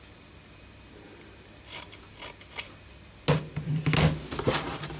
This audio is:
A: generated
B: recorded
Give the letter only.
B